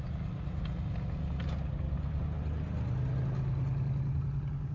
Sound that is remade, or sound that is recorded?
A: recorded